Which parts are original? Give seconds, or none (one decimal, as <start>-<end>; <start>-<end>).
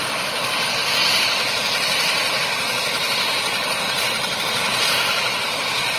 0.8-4.4